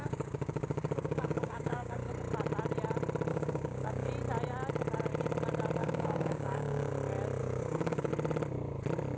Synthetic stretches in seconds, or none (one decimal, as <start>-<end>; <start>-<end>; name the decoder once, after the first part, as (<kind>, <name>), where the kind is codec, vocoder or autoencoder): 0.0-2.1 (codec, DAC); 3.3-4.1; 5.8-6.9; 7.4-8.1